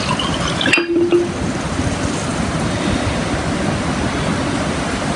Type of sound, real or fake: real